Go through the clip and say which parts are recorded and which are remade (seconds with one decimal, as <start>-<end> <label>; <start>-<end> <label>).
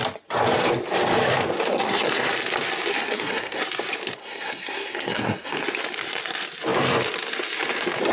0.0-1.7 recorded; 1.7-2.3 remade; 2.3-2.9 recorded; 2.9-3.6 remade; 3.6-4.2 recorded; 4.2-5.7 remade; 5.7-8.1 recorded